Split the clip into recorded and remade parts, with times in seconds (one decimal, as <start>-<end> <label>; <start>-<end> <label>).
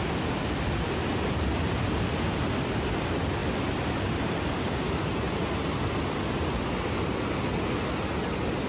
0.0-8.7 recorded